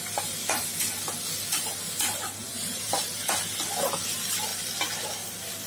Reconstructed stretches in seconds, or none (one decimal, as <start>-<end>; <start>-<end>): 2.4-3.3; 4.5-5.7

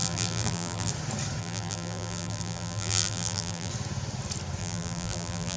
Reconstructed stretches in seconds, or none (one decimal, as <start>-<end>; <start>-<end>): 0.0-0.9; 1.4-3.7; 4.6-5.6